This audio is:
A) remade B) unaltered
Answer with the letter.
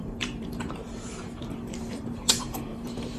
A